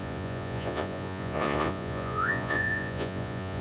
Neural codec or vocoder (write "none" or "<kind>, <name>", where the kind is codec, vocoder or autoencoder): vocoder, Vocos